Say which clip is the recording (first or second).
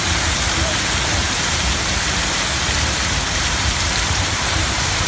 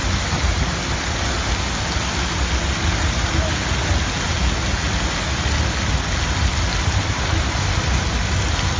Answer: second